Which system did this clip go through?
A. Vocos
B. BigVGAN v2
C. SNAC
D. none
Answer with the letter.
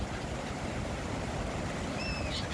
D